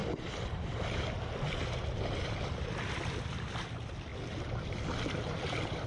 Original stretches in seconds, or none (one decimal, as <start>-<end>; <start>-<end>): 3.5-4.1